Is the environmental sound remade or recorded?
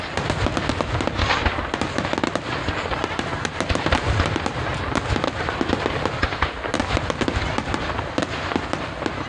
recorded